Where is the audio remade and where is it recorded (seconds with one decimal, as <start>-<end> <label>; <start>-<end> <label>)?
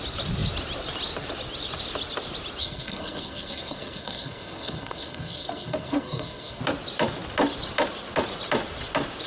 0.0-2.6 recorded; 2.6-6.6 remade; 6.6-9.3 recorded